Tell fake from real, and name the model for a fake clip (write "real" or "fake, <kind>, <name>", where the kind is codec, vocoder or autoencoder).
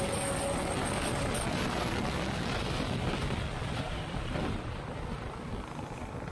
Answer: real